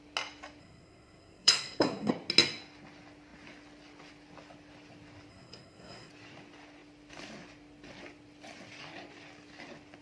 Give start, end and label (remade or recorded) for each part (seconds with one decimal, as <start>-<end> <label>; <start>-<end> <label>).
0.0-0.6 recorded; 0.6-2.1 remade; 2.1-5.3 recorded; 5.3-6.1 remade; 6.1-10.0 recorded